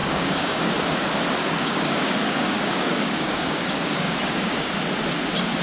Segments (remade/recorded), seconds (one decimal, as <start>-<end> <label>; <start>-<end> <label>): 0.0-0.7 remade; 0.7-1.4 recorded; 1.4-4.7 remade; 4.7-5.6 recorded